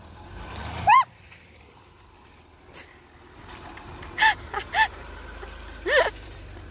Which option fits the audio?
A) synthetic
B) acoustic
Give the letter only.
A